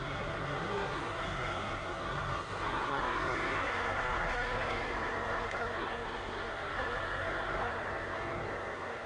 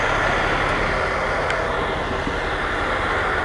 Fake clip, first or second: first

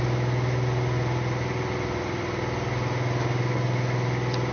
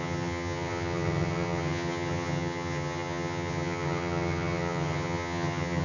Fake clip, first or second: second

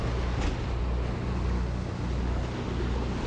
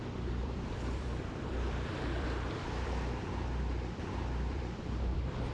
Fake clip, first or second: second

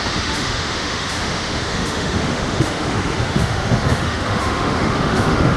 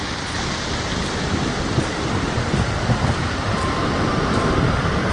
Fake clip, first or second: first